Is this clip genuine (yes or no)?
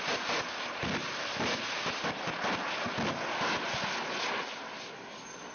yes